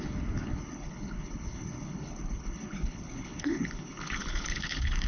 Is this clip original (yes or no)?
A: no